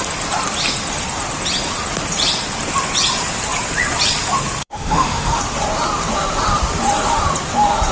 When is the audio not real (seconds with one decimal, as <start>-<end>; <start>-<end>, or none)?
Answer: 4.6-5.4